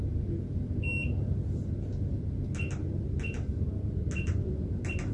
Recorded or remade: recorded